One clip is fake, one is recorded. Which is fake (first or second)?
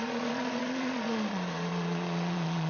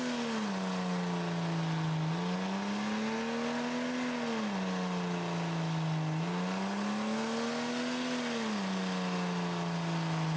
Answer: first